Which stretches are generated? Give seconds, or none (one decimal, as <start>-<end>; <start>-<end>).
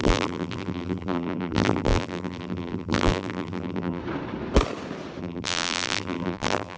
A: 0.0-4.0; 5.2-6.8